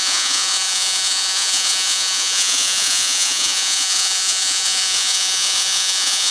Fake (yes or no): yes